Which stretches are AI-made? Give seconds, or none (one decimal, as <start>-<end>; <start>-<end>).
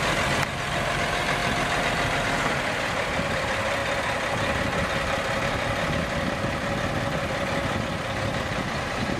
0.0-1.4; 2.4-3.8; 8.5-9.2